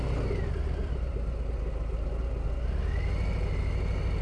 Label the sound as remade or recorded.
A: recorded